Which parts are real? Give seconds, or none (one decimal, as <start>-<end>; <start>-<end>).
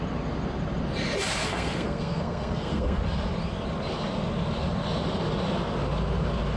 0.0-1.4; 3.0-6.6